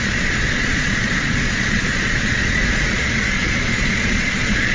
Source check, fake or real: fake